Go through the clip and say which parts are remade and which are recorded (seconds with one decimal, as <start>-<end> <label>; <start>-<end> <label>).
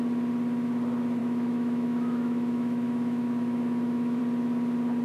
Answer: 0.0-1.2 recorded; 1.2-4.2 remade; 4.2-5.0 recorded